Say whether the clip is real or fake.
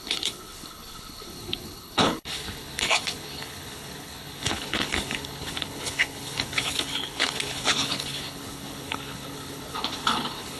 fake